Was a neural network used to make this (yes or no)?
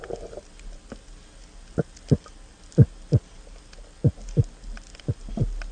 no